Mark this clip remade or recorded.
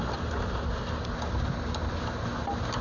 recorded